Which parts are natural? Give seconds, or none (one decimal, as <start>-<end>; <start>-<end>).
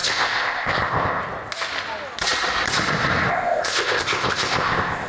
1.2-3.3